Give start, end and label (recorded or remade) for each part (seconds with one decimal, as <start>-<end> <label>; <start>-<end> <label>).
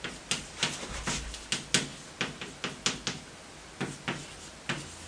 0.0-5.1 recorded